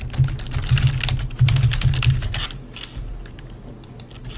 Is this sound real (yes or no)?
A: yes